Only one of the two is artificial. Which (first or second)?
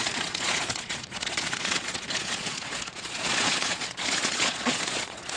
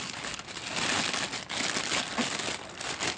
first